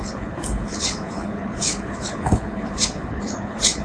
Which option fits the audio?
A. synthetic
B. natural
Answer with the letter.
A